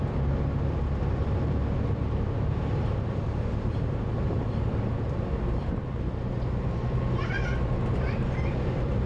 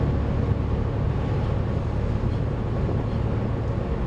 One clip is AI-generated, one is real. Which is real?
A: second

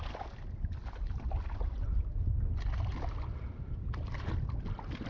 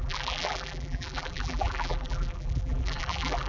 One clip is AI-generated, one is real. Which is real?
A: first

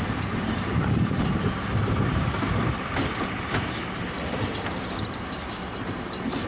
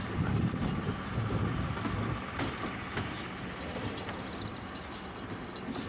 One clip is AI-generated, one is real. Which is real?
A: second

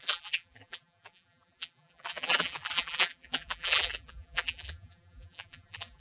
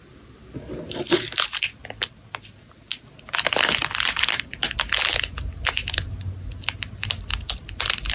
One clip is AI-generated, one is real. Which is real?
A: second